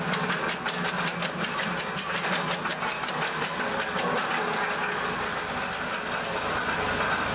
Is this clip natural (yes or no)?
yes